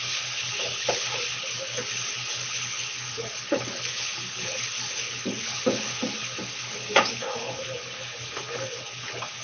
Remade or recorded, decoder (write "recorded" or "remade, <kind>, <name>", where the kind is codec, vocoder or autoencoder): remade, codec, HILCodec